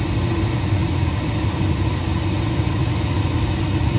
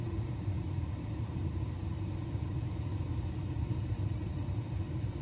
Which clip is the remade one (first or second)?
second